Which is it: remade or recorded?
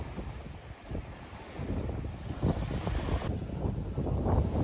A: recorded